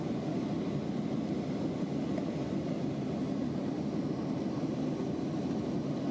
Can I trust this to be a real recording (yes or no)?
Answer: yes